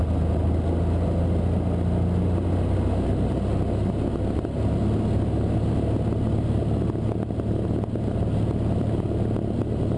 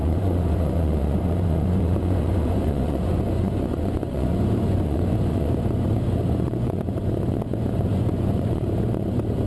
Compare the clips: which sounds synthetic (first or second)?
second